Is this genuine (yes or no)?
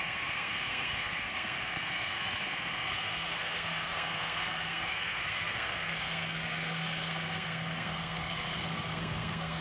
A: no